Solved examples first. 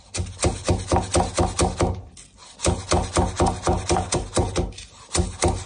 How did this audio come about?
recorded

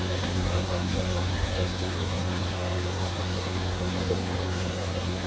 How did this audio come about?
remade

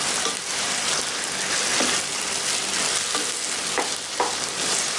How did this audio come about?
recorded